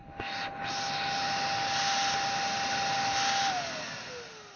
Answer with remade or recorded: recorded